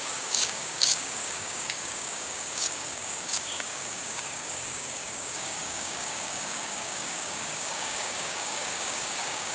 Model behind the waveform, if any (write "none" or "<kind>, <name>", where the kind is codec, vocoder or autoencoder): codec, DAC